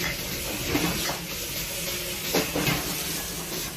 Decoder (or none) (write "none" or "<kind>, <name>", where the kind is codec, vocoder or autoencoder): none